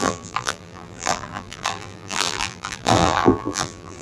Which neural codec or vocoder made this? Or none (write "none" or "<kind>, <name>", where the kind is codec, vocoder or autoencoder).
vocoder, BigVGAN v2